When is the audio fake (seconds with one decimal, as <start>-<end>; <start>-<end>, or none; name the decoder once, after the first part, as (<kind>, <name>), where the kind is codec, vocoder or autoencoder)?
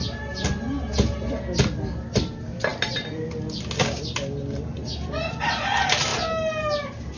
2.7-3.6 (vocoder, BigVGAN v2)